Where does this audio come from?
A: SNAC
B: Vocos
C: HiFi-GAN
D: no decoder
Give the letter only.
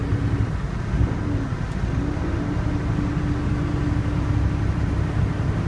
D